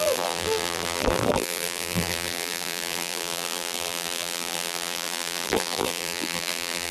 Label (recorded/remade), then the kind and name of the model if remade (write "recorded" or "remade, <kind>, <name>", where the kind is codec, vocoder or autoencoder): remade, vocoder, BigVGAN v2